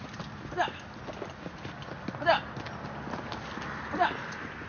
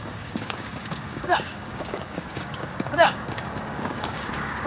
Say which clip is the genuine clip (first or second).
first